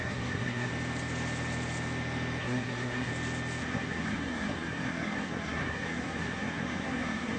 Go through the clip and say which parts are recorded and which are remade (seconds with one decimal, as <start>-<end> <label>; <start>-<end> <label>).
0.0-0.7 remade; 0.7-2.4 recorded; 2.4-3.1 remade; 3.1-3.7 recorded; 3.7-7.4 remade